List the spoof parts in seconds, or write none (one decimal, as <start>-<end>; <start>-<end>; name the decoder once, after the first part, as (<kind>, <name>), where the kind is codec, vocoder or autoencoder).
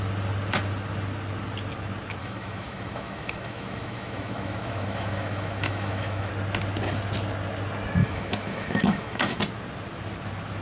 2.2-6.3 (autoencoder, DAC-VAE); 8.0-9.4